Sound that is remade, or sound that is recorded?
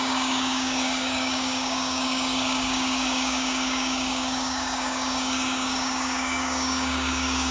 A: remade